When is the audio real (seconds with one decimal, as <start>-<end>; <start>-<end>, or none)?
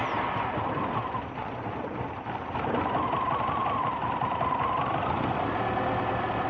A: 0.0-1.4; 2.1-6.5